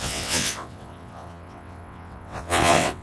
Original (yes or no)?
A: no